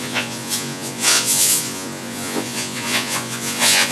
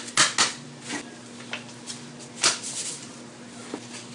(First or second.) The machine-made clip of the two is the first